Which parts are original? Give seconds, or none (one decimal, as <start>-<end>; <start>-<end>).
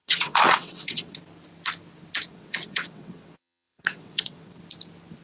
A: 1.2-2.3; 4.6-5.2